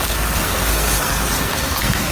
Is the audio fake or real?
fake